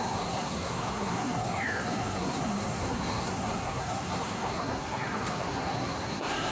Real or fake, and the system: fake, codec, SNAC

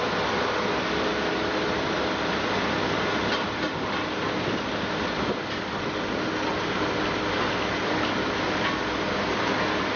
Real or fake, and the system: real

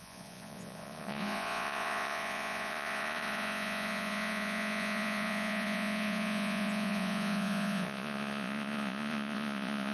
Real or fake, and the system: fake, vocoder, Vocos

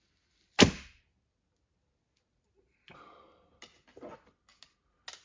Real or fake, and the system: real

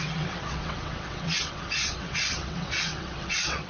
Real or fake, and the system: fake, vocoder, WaveNeXt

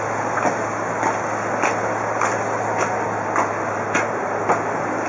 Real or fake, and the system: real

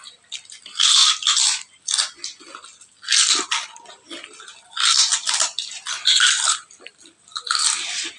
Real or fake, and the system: real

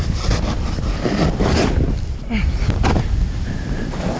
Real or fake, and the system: real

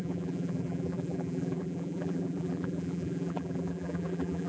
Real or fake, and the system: fake, vocoder, BigVGAN v2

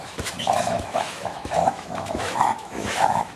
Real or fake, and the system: fake, autoencoder, DAC-VAE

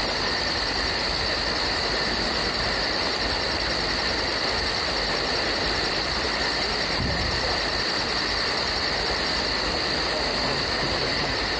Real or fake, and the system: real